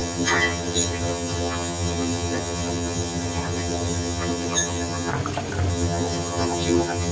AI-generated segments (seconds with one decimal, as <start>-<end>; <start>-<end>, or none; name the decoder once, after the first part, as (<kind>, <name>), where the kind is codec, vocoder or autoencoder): 0.0-5.1 (vocoder, HiFi-GAN); 5.7-7.1

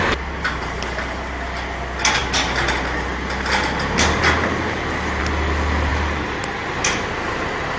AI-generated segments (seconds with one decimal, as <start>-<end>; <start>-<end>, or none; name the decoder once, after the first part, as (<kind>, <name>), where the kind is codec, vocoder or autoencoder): 5.9-6.8 (vocoder, BigVGAN v2)